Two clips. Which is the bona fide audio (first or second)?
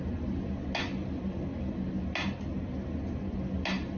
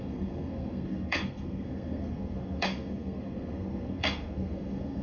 first